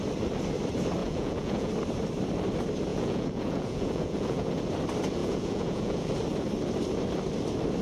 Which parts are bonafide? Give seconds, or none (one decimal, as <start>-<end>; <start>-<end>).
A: 0.0-1.0; 1.7-2.9; 4.6-5.2; 6.1-7.8